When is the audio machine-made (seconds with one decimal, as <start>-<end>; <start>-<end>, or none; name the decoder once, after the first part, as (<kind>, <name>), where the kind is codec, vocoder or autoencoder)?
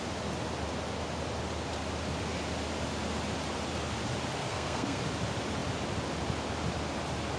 4.4-5.0 (codec, SNAC)